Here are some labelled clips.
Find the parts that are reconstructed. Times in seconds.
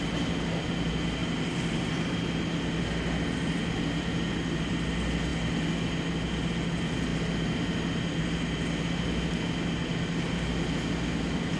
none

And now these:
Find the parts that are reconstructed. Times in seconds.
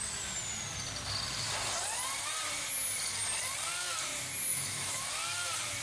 4.5-5.1 (autoencoder, DAC-VAE)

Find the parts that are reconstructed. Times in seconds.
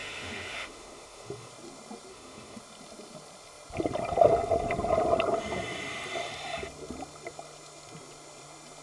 0.0-1.5 (autoencoder, DAC-VAE); 2.1-2.6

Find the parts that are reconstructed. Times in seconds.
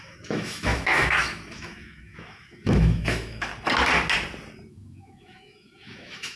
0.0-3.5 (autoencoder, DAC-VAE); 4.7-6.4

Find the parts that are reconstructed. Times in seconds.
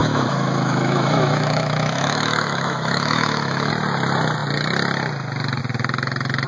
0.0-3.7 (autoencoder, DAC-VAE)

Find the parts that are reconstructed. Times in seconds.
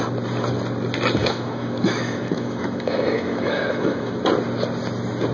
1.2-4.2 (autoencoder, DAC-VAE)